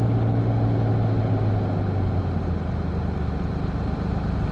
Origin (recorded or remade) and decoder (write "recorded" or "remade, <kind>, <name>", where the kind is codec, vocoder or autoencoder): recorded